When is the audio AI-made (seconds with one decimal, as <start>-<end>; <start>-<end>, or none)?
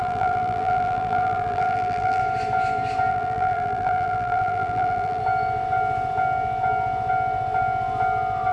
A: 0.0-2.2; 3.1-5.2